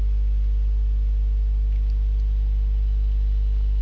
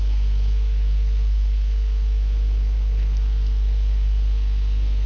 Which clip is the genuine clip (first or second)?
first